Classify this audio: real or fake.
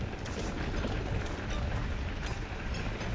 real